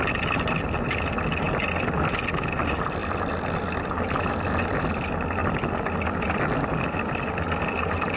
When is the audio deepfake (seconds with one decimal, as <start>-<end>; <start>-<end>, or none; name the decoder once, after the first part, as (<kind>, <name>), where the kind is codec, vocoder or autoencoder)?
none